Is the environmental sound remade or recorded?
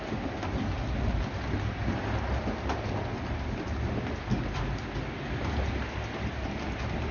recorded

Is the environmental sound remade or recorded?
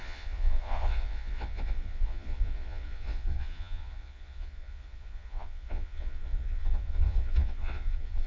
remade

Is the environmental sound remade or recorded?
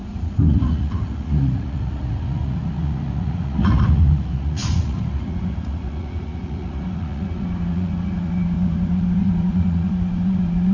remade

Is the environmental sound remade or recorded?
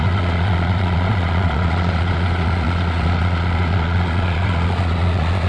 remade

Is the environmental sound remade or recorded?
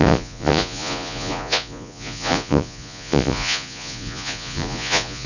remade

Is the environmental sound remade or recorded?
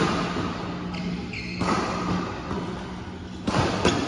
recorded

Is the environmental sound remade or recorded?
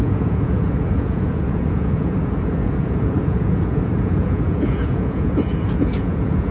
remade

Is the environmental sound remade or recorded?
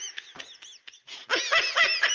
recorded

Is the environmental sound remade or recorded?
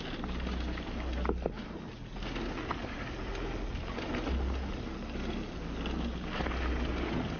recorded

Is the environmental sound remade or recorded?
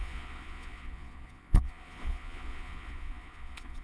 remade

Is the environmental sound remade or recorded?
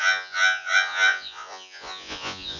remade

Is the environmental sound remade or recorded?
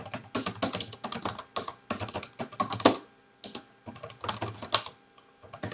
recorded